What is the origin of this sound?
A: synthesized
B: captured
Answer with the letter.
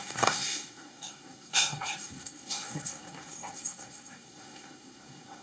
A